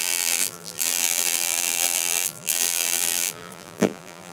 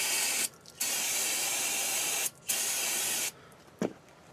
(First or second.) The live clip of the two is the second